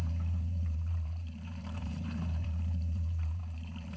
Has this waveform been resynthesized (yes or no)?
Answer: yes